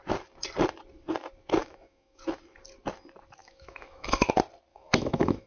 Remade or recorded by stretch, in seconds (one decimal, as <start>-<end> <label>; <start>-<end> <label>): 0.0-1.6 recorded; 1.6-2.2 remade; 2.2-3.4 recorded; 3.4-4.3 remade; 4.3-4.7 recorded; 4.7-5.5 remade